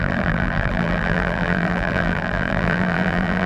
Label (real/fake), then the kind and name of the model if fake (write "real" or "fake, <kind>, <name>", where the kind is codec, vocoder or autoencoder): fake, vocoder, BigVGAN v2